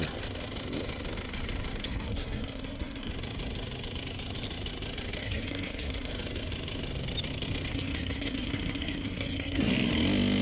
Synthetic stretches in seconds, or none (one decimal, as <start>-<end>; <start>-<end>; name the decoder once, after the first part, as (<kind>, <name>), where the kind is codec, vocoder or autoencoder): 1.8-3.1 (codec, SNAC); 5.2-6.1; 7.7-9.7